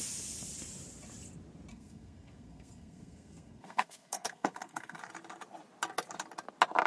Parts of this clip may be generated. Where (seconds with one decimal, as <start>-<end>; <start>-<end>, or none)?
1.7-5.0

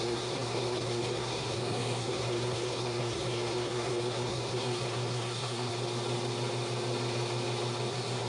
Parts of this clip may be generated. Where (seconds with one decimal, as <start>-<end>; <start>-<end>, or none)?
0.0-5.7; 7.9-8.3

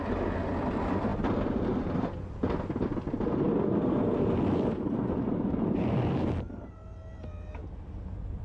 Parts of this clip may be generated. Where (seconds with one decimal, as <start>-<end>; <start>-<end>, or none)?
none

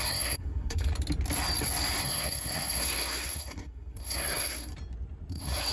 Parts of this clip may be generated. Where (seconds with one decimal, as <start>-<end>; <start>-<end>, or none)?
0.0-0.9; 2.0-4.7; 5.3-5.7